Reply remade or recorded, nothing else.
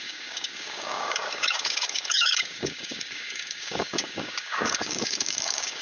remade